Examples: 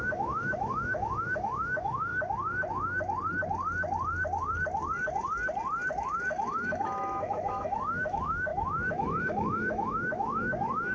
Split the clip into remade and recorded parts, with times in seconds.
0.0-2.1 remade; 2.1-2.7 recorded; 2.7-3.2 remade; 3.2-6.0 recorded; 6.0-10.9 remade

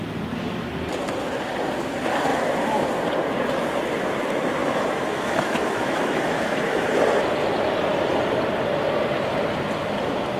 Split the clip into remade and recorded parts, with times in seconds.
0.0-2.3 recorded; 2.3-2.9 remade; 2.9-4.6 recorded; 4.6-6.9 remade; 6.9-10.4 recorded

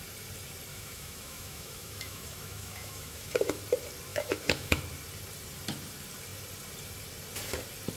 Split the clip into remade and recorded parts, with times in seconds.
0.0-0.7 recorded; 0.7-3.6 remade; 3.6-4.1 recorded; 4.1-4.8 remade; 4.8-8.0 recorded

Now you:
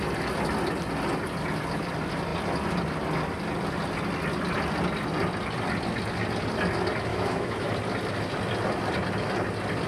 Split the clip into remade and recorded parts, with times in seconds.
0.0-7.1 recorded; 7.1-7.7 remade; 7.7-9.9 recorded

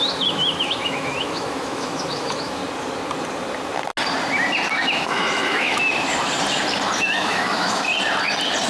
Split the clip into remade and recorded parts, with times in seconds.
0.0-2.6 remade; 2.6-4.8 recorded; 4.8-5.8 remade; 5.8-7.0 recorded; 7.0-7.9 remade; 7.9-8.7 recorded